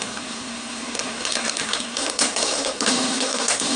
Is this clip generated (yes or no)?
yes